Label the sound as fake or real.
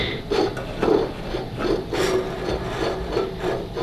real